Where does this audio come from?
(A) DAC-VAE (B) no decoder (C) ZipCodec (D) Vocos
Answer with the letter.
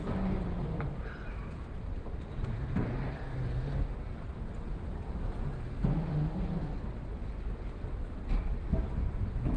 B